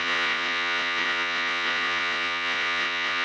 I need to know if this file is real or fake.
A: fake